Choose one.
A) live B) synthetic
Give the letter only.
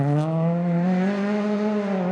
A